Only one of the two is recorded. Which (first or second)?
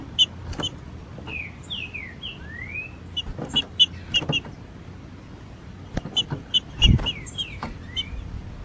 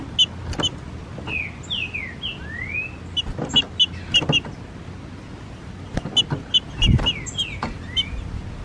second